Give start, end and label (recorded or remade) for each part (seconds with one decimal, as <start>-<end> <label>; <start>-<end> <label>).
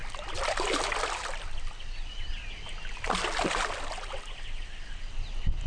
0.0-5.7 recorded